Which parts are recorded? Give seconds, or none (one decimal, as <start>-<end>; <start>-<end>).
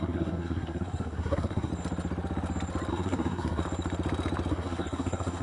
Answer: 1.7-2.9; 3.6-4.5